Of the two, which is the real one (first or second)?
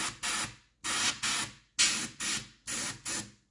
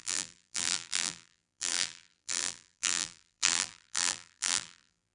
first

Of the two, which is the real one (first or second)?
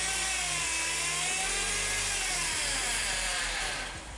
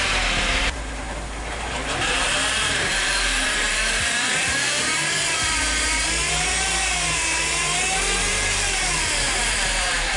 first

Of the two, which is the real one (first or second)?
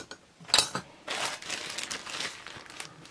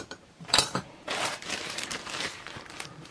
first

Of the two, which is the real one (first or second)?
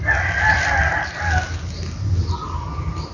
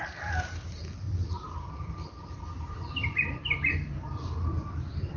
first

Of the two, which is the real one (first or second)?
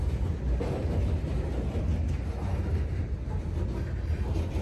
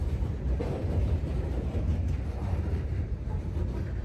first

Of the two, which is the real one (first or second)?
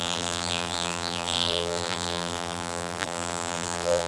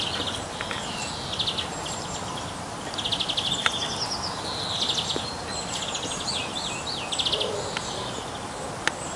second